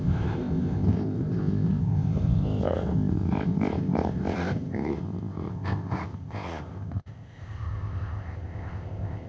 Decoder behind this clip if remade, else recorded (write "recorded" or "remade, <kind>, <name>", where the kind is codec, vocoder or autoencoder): remade, codec, ZipCodec